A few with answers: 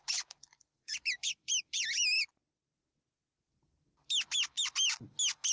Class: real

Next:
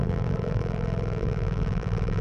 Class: fake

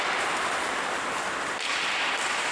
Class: real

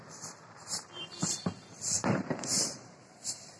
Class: fake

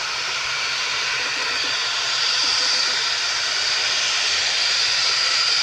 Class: fake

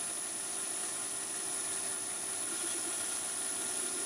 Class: real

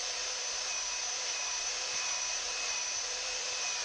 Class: fake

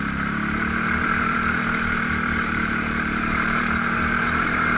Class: fake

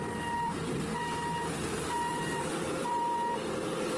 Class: fake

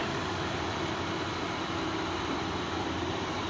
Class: fake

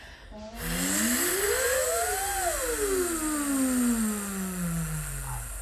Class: real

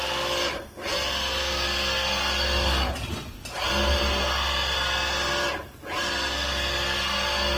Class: real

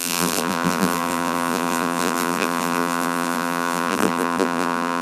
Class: fake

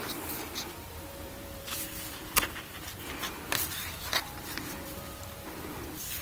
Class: fake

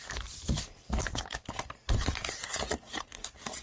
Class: fake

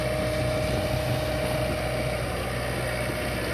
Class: real